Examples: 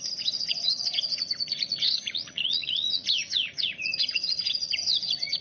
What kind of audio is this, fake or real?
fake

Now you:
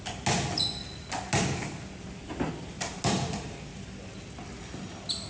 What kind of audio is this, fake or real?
real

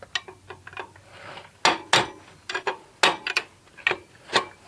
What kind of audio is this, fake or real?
real